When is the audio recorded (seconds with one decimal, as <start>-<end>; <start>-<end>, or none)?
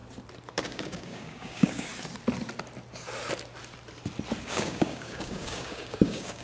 0.0-0.5; 1.9-4.4